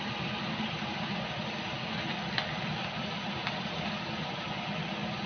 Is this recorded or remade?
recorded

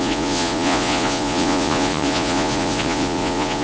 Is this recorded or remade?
remade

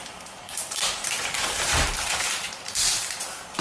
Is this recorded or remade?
remade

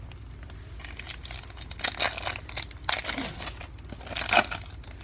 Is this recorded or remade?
recorded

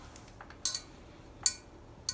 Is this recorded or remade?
recorded